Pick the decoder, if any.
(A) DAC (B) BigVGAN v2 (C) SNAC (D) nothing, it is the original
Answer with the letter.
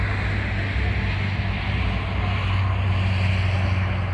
D